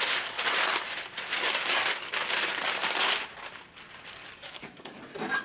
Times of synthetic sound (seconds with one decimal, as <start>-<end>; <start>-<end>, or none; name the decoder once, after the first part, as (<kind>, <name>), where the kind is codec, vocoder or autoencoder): 1.4-2.1 (codec, DAC); 4.2-5.0